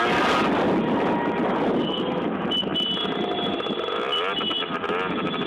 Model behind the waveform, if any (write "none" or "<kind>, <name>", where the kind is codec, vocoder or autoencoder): none